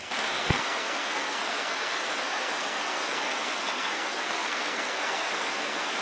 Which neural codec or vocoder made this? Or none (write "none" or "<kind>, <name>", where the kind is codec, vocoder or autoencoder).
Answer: codec, SNAC